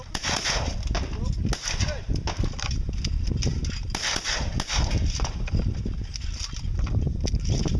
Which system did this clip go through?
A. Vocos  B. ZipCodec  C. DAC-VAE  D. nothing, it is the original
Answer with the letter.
D